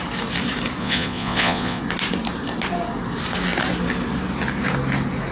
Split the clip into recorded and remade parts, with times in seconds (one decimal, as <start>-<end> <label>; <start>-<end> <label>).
0.0-0.8 recorded; 0.8-1.8 remade; 1.8-5.3 recorded